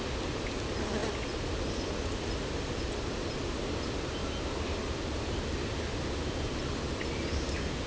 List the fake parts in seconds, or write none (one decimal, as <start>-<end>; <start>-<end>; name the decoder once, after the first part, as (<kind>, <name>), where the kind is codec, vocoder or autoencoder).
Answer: none